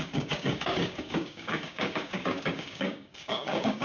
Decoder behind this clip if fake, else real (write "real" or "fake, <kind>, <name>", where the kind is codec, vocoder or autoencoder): fake, codec, DAC